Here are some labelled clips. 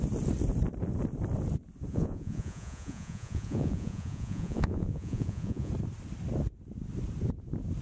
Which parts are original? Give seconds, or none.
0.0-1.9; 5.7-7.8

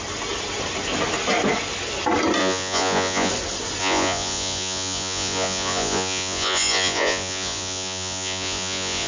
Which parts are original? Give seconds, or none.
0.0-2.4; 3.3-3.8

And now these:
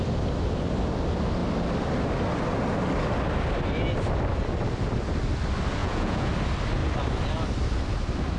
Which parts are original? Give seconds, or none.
0.0-5.8; 6.3-8.4

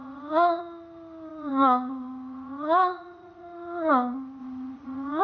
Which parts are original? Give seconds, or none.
0.6-1.3; 3.9-4.4

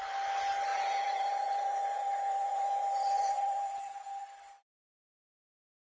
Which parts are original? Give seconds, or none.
0.0-0.7; 4.2-5.8

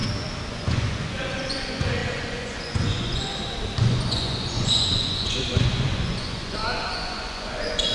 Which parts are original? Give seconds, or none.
0.0-0.5; 3.3-3.8